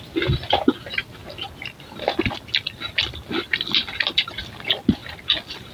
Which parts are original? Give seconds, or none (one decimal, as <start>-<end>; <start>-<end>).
0.0-5.7